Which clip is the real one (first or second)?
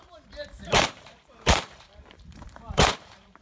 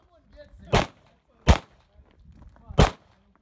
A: second